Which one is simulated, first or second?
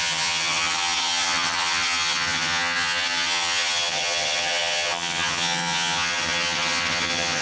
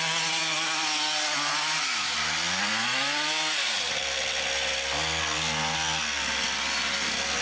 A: first